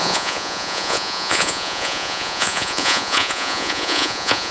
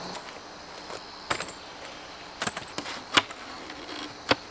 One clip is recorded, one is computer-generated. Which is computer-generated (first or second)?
first